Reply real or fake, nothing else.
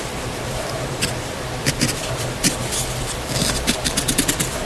fake